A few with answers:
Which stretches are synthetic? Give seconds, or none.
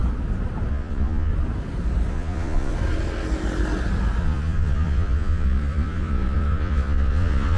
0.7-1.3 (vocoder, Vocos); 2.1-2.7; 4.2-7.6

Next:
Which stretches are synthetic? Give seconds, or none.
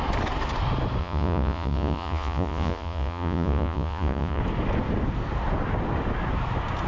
1.0-4.4 (vocoder, Vocos)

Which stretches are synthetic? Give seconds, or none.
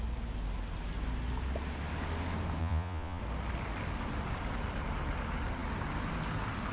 2.6-3.2 (vocoder, Vocos)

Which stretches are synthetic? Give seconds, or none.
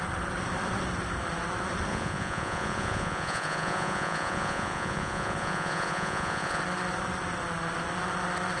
1.9-6.6 (vocoder, Vocos)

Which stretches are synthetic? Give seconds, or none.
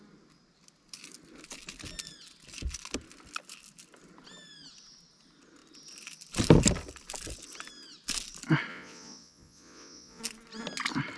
8.7-10.2 (vocoder, Vocos)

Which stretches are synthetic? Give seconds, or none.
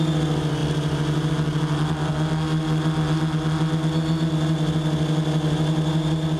none